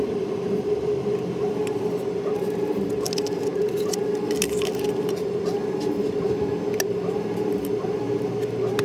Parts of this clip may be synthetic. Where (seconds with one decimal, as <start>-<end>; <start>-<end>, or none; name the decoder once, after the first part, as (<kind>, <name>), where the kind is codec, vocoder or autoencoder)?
none